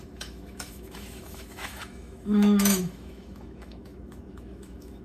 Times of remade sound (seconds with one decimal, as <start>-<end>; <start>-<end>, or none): 0.0-5.0